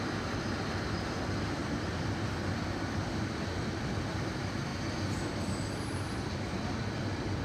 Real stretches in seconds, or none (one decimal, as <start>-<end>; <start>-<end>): 0.0-1.6; 4.1-7.4